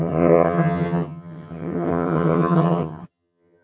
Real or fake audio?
fake